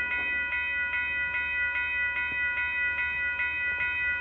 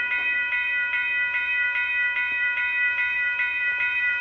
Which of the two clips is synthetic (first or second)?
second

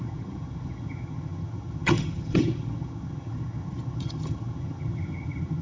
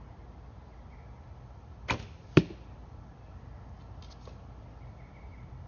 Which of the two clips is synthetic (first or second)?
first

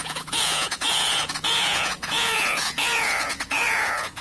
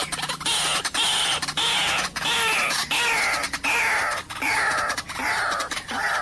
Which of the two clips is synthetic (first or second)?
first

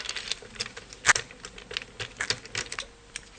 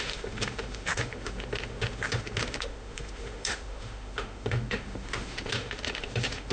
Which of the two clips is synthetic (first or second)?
second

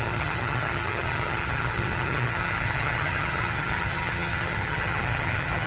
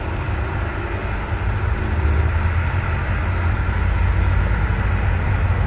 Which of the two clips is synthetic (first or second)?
first